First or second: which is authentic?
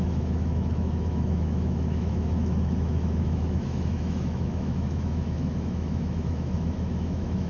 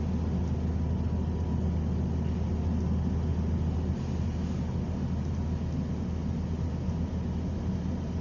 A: second